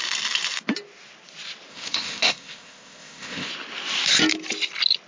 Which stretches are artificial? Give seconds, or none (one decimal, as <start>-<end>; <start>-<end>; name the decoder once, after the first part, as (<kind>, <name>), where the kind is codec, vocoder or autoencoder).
1.7-3.5 (codec, ZipCodec)